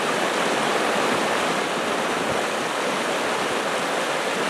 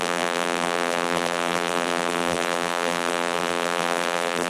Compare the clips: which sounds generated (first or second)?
second